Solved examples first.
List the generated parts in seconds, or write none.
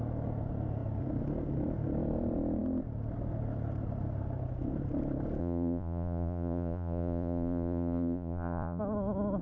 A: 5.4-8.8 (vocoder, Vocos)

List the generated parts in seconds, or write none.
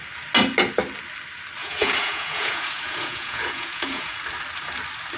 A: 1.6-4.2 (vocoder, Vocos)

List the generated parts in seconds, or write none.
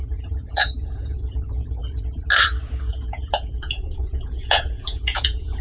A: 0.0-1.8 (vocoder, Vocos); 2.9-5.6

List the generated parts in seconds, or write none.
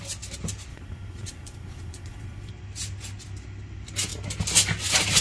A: 0.7-2.5 (vocoder, Vocos)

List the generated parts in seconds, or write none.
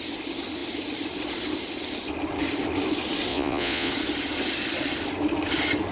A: 3.3-3.9 (vocoder, Vocos)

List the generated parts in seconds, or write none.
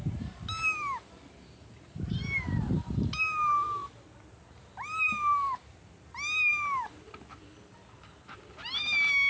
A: none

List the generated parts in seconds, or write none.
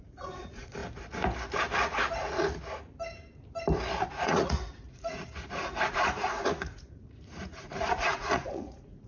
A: 0.0-0.8 (vocoder, Vocos); 4.1-9.1